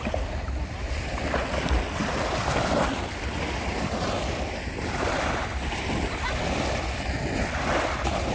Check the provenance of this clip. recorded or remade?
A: remade